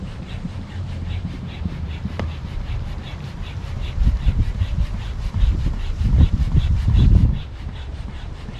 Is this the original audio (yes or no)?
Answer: no